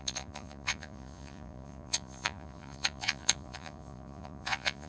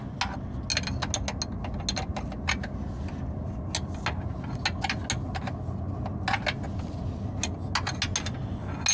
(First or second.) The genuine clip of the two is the second